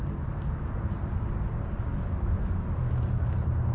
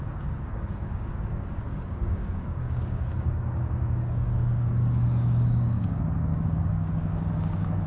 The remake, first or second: second